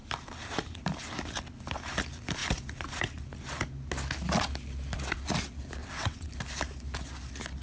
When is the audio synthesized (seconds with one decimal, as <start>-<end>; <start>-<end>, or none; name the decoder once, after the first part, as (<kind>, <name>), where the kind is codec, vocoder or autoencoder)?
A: 5.8-6.3 (vocoder, WaveNeXt)